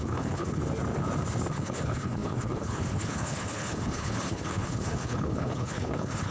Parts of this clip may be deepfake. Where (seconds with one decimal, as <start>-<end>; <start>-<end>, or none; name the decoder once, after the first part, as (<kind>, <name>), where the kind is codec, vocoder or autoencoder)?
0.0-0.6 (codec, HILCodec); 1.5-6.3